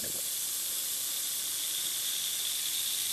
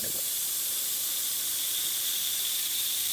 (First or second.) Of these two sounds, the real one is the first